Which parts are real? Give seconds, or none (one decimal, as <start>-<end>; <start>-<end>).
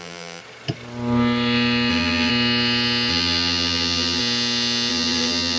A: 0.4-1.9; 2.3-3.1; 4.2-4.9